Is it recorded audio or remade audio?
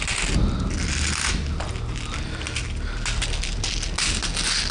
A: recorded